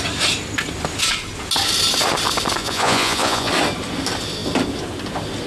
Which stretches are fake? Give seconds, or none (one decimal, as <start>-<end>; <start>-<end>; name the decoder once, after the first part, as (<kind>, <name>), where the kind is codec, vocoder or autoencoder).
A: 2.6-3.5 (vocoder, Vocos)